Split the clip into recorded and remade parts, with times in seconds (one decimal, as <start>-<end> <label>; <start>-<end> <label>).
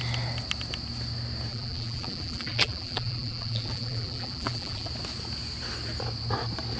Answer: 0.0-1.5 recorded; 1.5-4.9 remade; 4.9-6.8 recorded